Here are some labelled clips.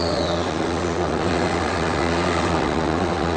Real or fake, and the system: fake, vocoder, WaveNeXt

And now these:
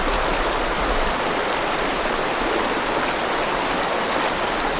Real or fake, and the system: real